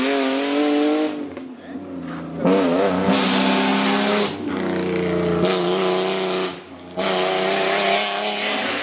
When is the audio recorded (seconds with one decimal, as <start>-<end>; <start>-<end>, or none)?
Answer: 0.0-8.8